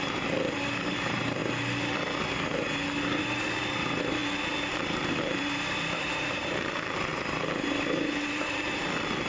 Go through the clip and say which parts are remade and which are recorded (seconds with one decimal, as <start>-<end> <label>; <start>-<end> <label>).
0.0-1.4 remade; 1.4-3.2 recorded; 3.2-4.2 remade; 4.2-4.7 recorded; 4.7-7.1 remade; 7.1-8.3 recorded; 8.3-9.3 remade